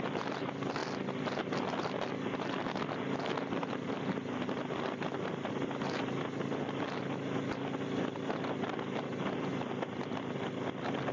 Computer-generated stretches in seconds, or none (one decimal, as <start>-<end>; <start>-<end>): none